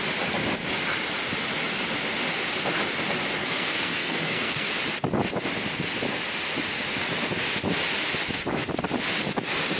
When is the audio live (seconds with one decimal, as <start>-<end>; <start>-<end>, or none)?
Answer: 0.0-3.4; 4.7-9.8

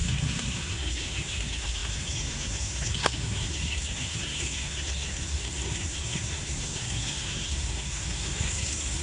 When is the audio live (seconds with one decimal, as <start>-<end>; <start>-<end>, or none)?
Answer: none